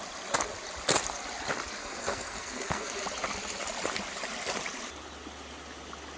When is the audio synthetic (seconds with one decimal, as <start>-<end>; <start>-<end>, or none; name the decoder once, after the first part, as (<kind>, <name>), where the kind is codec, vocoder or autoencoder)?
1.8-2.9 (codec, SNAC)